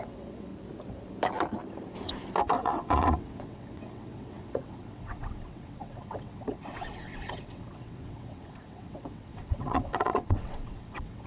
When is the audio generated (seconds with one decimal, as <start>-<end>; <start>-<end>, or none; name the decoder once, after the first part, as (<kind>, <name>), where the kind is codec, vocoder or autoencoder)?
0.0-0.5 (vocoder, WaveNeXt); 2.6-11.3